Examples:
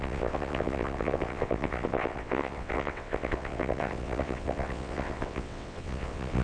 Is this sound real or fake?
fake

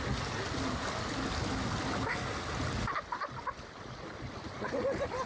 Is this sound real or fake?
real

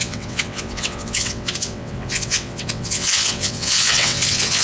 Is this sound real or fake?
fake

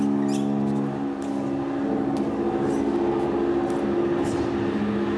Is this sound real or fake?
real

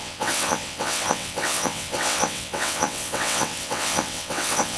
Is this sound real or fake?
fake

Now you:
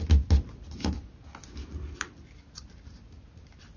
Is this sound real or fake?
real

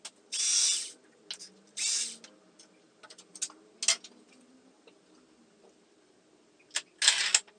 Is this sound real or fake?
real